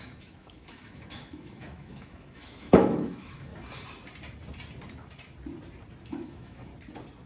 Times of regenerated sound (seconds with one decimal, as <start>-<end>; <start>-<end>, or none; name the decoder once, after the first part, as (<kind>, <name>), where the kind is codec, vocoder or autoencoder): 0.0-3.5 (autoencoder, DAC-VAE); 6.0-6.7